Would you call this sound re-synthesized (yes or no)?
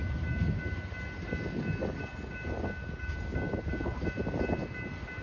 no